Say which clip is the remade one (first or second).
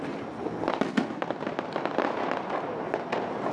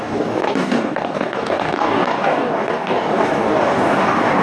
second